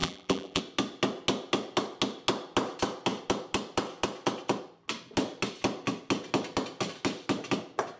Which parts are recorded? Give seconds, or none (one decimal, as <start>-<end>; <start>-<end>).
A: 0.6-8.0